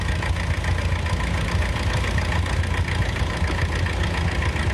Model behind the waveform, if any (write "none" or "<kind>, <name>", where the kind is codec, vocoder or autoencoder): none